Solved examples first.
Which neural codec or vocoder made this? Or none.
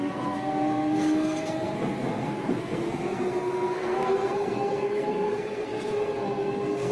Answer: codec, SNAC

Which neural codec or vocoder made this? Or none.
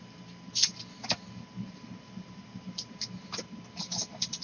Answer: none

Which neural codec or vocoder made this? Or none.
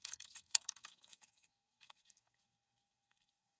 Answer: codec, SNAC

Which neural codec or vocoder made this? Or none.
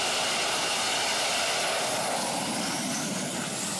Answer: none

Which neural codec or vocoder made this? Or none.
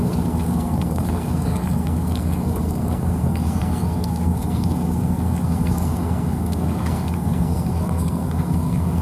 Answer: codec, SNAC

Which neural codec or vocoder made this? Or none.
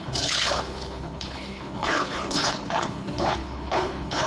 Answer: codec, HILCodec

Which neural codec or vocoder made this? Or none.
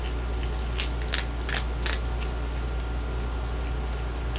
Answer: none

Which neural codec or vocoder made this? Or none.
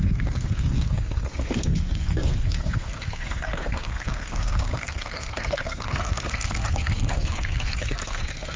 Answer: codec, SNAC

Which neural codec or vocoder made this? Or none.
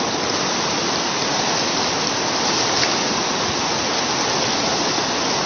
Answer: none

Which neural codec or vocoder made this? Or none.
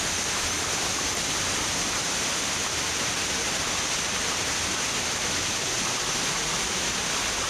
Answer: none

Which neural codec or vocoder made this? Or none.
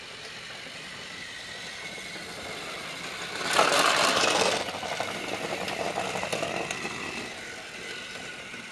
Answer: none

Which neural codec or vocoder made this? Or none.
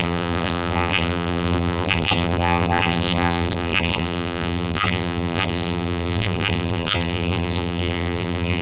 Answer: vocoder, BigVGAN v2